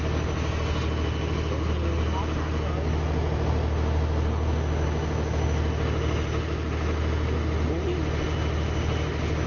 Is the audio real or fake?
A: real